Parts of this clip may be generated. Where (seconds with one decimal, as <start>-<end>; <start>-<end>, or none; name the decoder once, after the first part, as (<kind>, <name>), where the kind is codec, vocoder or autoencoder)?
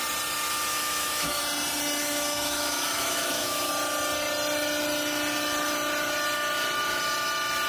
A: 0.7-1.4 (autoencoder, DAC-VAE); 2.0-3.7